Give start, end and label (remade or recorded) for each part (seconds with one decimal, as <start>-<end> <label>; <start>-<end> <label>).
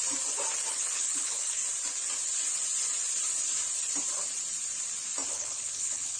0.0-0.7 recorded; 0.7-1.6 remade; 1.6-5.3 recorded; 5.3-6.2 remade